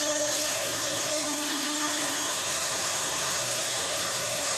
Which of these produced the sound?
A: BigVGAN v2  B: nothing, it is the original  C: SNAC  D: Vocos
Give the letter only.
C